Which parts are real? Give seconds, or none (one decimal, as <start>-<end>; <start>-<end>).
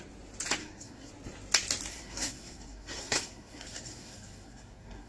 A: 0.0-0.6; 1.1-1.9